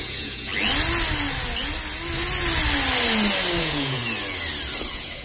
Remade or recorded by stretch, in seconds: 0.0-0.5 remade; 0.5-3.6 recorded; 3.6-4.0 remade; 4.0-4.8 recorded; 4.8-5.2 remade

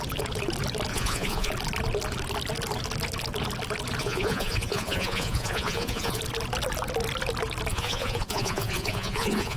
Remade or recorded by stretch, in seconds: 0.0-0.9 recorded; 0.9-1.5 remade; 1.5-4.0 recorded; 4.0-6.2 remade; 6.2-7.7 recorded; 7.7-9.6 remade

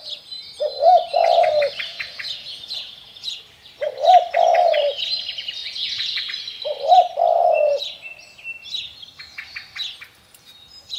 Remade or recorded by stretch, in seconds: 0.0-1.9 recorded; 1.9-3.4 remade; 3.4-5.6 recorded; 5.6-6.2 remade; 6.2-11.0 recorded

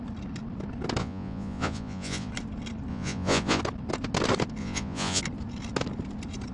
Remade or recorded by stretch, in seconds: 0.0-1.0 recorded; 1.0-2.3 remade; 2.3-2.9 recorded; 2.9-3.6 remade; 3.6-4.6 recorded; 4.6-5.2 remade; 5.2-6.5 recorded

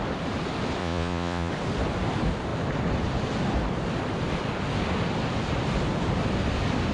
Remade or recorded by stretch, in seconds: 0.0-0.8 recorded; 0.8-1.5 remade; 1.5-6.9 recorded

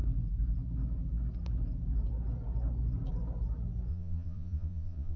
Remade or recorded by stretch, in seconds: 0.0-3.9 recorded; 3.9-5.2 remade

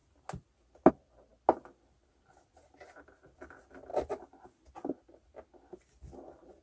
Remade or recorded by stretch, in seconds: 0.0-6.6 recorded